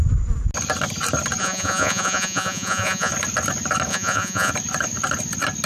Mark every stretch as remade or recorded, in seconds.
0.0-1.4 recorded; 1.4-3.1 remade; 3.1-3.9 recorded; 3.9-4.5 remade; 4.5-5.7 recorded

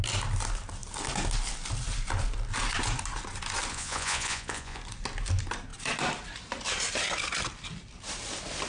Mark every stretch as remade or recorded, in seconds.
0.0-3.7 recorded; 3.7-4.8 remade; 4.8-8.7 recorded

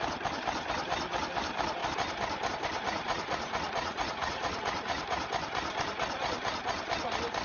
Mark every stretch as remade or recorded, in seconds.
0.0-2.9 recorded; 2.9-5.3 remade; 5.3-7.4 recorded